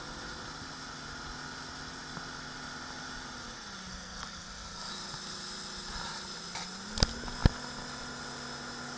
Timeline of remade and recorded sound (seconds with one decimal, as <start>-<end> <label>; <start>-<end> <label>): 0.0-3.9 recorded; 3.9-4.9 remade; 4.9-9.0 recorded